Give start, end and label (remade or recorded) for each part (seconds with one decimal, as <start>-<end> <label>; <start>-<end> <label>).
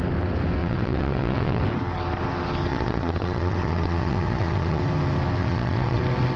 0.0-0.6 recorded; 0.6-1.6 remade; 1.6-2.7 recorded; 2.7-4.8 remade; 4.8-5.4 recorded; 5.4-6.0 remade; 6.0-6.4 recorded